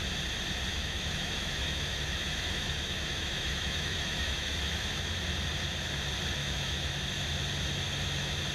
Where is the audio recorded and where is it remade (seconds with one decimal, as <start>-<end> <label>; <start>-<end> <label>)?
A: 0.0-0.7 recorded; 0.7-5.1 remade; 5.1-6.4 recorded; 6.4-6.9 remade; 6.9-8.5 recorded